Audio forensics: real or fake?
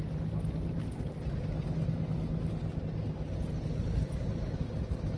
real